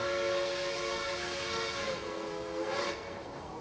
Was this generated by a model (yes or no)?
yes